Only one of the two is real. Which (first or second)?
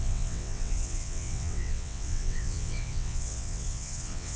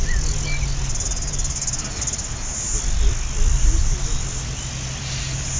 second